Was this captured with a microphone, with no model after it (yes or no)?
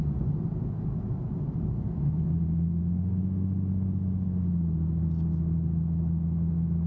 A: yes